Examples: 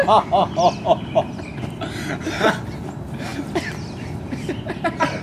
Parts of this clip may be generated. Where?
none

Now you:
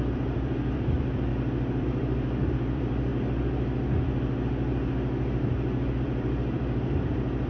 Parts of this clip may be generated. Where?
0.0-1.3; 1.8-3.1; 6.0-7.5

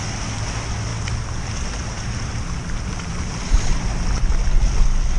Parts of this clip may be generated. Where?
0.9-4.0